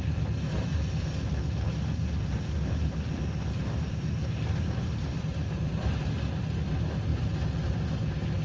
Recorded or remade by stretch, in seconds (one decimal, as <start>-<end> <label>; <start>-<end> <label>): 0.0-8.4 recorded